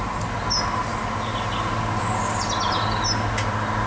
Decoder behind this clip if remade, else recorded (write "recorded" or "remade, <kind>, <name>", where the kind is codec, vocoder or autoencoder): recorded